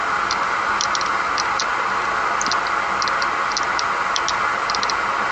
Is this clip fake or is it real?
real